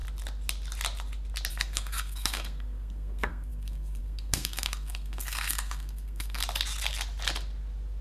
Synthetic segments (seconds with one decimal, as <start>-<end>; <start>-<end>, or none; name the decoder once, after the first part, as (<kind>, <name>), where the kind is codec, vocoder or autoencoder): 1.5-6.4 (codec, SNAC)